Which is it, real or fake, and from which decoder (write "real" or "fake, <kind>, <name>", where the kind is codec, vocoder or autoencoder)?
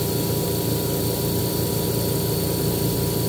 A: real